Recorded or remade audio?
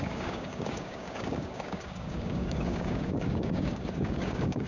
remade